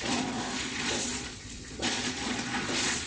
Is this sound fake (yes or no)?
yes